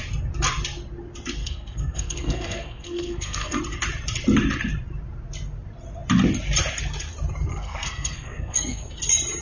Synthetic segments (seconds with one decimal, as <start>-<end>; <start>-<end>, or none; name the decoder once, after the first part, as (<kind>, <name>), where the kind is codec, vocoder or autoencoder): 1.4-3.6 (codec, SNAC); 7.5-8.9